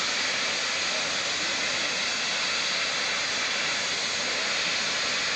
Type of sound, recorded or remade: recorded